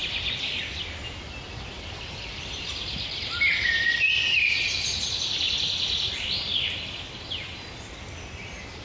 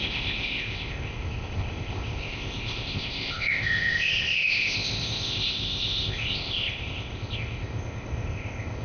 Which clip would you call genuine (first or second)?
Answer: first